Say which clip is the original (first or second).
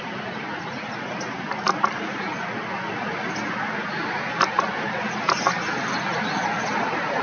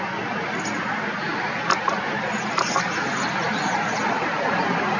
first